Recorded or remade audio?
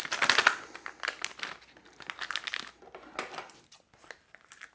recorded